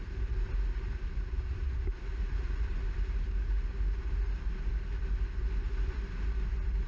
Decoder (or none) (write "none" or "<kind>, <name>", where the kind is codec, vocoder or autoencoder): none